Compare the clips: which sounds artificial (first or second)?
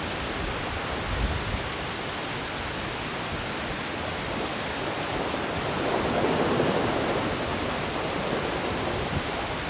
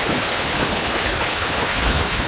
second